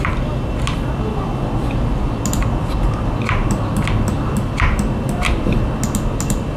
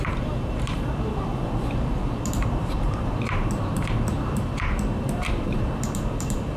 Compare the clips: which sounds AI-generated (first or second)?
second